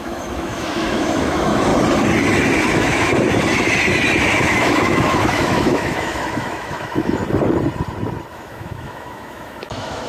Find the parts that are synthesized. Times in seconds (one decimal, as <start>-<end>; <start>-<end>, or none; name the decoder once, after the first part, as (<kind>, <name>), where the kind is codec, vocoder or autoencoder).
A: 0.0-1.7 (autoencoder, DAC-VAE); 2.7-3.1; 4.4-7.2; 8.3-10.1